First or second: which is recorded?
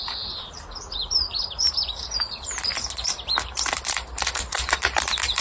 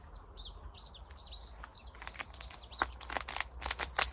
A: second